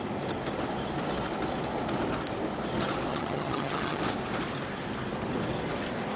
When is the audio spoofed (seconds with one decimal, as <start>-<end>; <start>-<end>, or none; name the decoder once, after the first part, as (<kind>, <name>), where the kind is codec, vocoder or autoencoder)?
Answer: 3.1-4.0 (vocoder, HiFi-GAN)